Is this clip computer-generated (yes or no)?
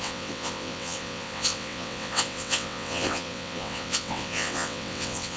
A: yes